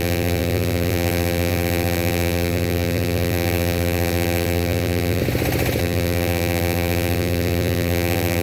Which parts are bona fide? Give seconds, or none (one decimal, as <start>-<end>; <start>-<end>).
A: 5.2-5.8